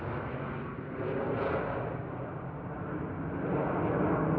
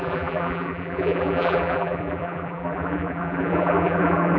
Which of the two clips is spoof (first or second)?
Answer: second